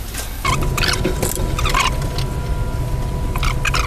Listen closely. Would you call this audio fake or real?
real